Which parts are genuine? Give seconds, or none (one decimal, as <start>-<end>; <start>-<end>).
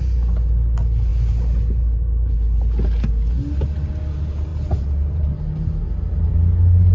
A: 0.0-4.5; 5.3-6.9